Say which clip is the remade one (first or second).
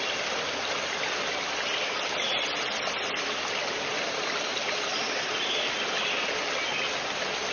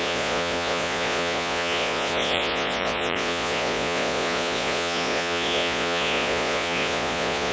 second